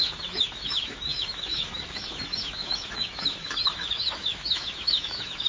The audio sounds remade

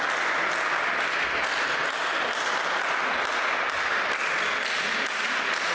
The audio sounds recorded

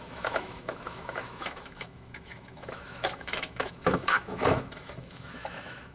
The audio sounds remade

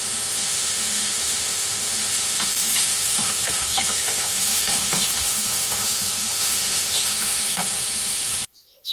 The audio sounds remade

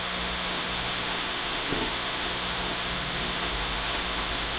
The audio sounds remade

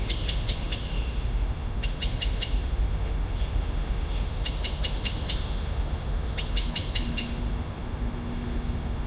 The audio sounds remade